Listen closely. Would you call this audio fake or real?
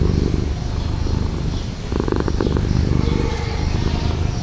real